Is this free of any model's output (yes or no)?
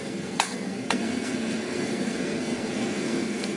no